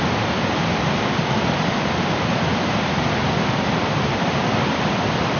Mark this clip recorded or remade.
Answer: recorded